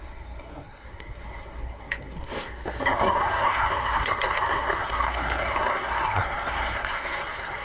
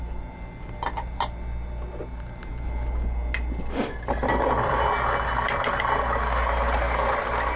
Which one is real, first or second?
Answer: second